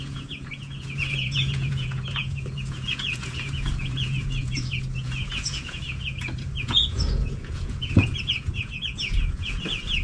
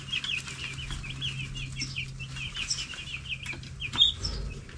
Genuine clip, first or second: second